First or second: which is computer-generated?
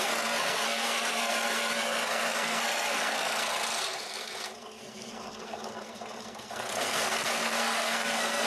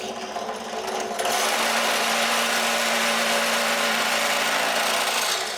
first